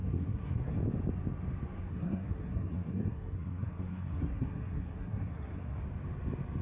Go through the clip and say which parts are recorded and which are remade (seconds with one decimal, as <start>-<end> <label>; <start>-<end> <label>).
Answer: 0.0-0.8 remade; 0.8-1.9 recorded; 1.9-5.8 remade; 5.8-6.6 recorded